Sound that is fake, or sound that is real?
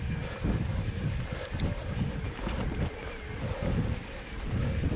real